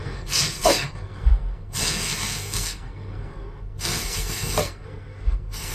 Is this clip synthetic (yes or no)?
yes